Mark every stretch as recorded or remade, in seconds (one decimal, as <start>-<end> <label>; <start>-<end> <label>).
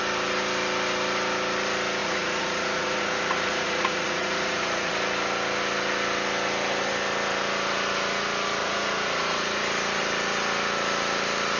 0.0-2.0 recorded; 2.0-4.9 remade; 4.9-8.6 recorded; 8.6-9.6 remade; 9.6-11.6 recorded